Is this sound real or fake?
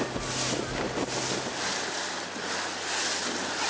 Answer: real